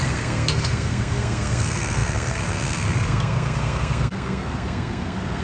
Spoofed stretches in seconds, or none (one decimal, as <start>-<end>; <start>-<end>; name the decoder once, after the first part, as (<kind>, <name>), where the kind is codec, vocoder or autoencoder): 0.0-5.4 (codec, SNAC)